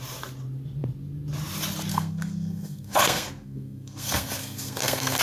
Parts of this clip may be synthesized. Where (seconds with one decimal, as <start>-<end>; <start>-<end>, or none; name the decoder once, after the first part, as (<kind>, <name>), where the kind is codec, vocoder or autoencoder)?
1.9-5.2 (codec, SNAC)